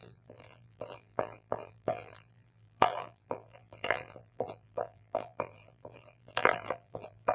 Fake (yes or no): yes